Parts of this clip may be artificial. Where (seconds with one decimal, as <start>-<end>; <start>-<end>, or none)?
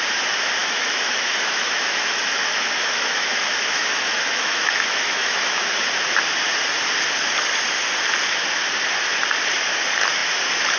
0.6-5.8